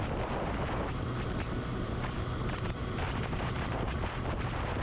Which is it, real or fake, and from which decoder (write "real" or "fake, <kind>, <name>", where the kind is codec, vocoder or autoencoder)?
real